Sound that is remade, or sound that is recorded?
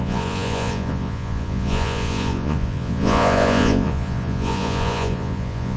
remade